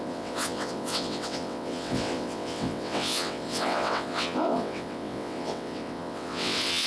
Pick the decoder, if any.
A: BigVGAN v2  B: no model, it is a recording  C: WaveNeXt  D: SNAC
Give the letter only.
C